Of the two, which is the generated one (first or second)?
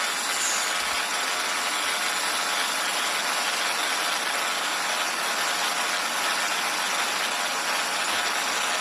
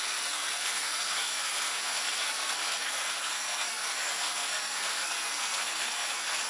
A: second